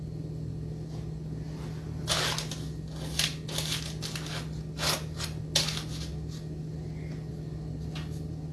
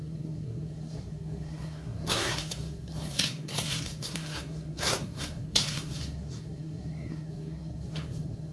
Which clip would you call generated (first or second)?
second